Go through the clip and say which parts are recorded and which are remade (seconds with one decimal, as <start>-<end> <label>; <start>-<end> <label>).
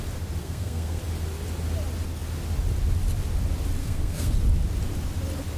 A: 0.0-0.4 recorded; 0.4-1.0 remade; 1.0-3.8 recorded; 3.8-4.3 remade; 4.3-5.6 recorded